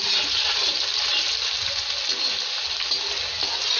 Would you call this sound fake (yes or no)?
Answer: no